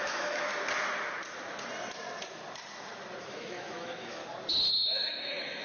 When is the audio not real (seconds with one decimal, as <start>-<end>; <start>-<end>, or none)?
0.0-0.5; 3.2-4.2; 4.7-5.6

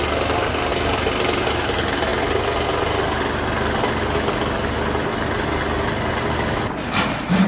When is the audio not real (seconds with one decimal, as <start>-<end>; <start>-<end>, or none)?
0.7-1.5

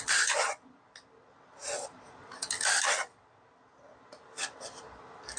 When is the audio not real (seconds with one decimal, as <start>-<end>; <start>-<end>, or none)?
none

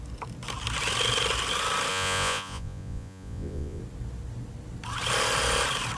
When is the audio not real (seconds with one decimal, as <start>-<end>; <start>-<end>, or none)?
1.9-3.8

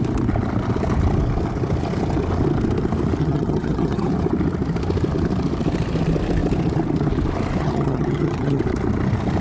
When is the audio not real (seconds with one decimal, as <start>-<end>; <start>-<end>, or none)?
3.2-4.1; 7.6-8.6

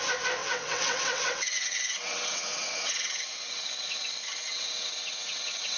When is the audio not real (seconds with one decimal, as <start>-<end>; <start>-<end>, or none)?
0.4-3.9; 4.4-5.8

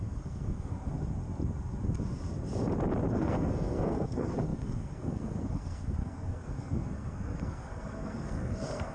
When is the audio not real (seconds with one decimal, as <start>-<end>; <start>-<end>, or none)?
0.0-0.9; 3.1-8.9